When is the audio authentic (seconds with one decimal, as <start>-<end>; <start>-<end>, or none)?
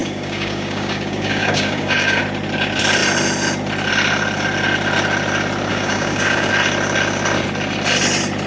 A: 2.2-5.7; 6.5-8.5